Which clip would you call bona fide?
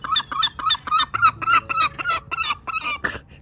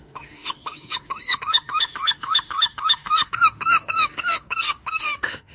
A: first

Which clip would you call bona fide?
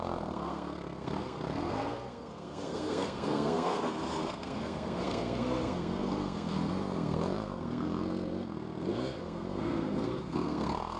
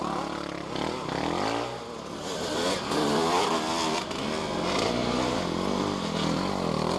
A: second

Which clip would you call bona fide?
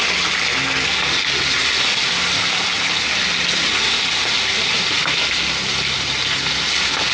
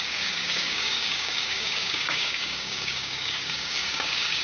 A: first